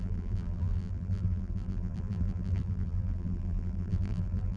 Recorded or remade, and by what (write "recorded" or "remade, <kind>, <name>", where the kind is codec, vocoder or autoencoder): remade, vocoder, BigVGAN v2